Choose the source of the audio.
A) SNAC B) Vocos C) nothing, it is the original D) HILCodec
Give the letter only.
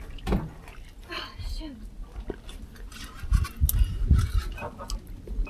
C